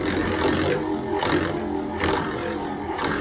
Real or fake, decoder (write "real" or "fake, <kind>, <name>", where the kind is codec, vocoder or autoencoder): real